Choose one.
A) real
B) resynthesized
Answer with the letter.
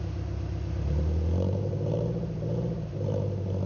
A